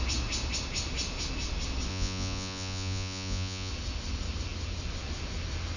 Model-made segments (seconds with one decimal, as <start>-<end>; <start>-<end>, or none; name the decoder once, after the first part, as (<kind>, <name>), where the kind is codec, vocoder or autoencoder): 1.9-3.7 (vocoder, Vocos)